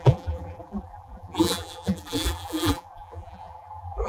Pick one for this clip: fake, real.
fake